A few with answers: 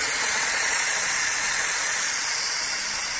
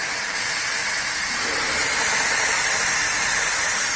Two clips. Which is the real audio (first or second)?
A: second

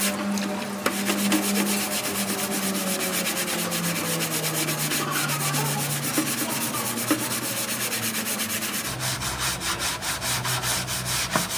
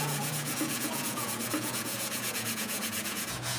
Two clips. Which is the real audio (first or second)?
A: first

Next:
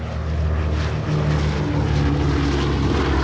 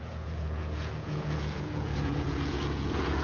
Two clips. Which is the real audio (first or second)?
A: first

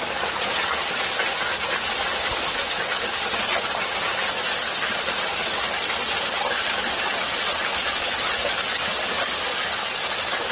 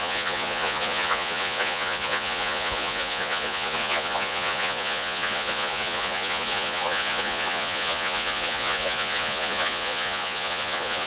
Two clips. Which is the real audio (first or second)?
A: first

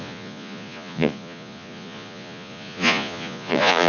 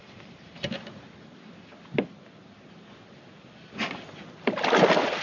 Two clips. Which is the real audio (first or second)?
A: second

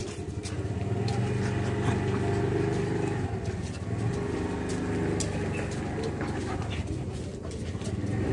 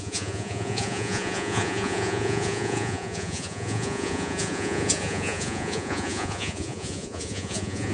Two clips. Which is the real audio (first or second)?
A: first